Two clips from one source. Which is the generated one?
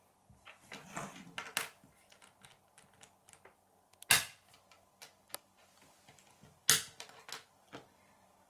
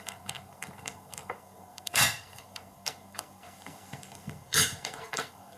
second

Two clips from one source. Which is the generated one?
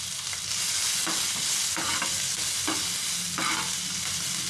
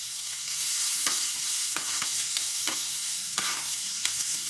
second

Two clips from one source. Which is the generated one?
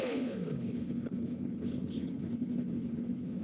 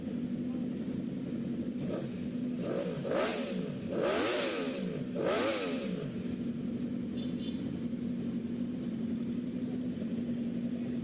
first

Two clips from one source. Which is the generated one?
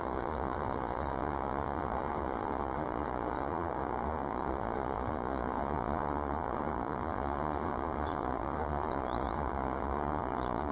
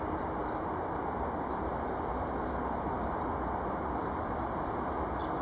first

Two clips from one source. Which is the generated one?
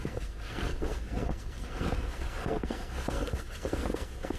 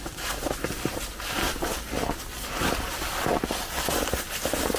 first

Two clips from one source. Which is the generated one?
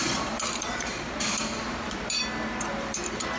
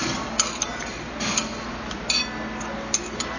first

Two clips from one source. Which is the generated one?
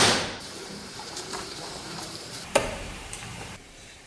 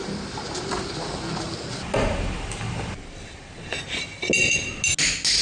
first